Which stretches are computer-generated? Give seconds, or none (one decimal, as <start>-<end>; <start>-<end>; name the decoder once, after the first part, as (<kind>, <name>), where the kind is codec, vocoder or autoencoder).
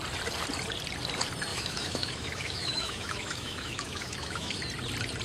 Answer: 1.5-4.6 (autoencoder, DAC-VAE)